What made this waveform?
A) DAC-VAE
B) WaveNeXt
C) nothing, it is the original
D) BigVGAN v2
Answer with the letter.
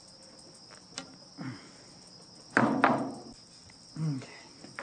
C